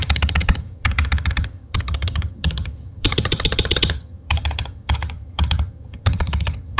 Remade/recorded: remade